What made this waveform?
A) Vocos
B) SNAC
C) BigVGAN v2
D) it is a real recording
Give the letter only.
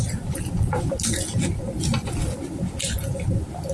D